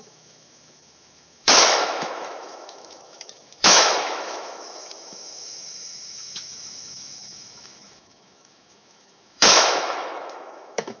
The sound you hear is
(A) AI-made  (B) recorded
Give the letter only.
A